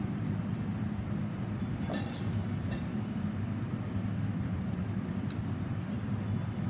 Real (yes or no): no